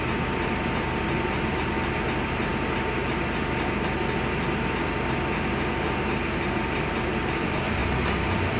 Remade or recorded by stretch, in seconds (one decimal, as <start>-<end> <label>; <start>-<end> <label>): 0.0-8.6 recorded